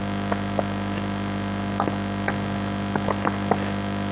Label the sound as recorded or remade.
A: recorded